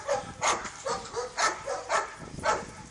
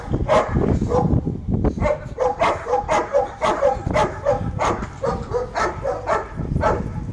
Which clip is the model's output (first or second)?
first